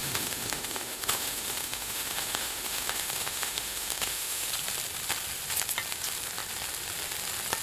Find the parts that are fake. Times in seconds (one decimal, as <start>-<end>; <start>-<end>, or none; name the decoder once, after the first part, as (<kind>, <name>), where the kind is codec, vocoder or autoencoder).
0.0-4.5 (autoencoder, DAC-VAE)